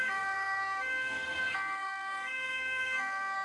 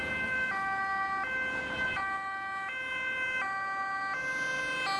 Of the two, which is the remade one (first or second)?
first